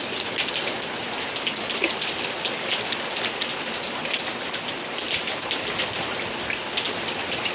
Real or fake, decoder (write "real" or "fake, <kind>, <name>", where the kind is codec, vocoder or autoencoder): real